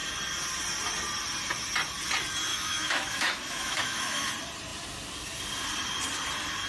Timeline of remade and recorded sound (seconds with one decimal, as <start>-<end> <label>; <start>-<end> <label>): 0.0-2.5 recorded; 2.5-4.3 remade; 4.3-6.7 recorded